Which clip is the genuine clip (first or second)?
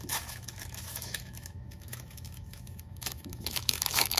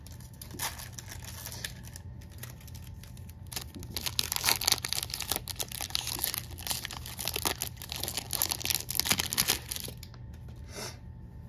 second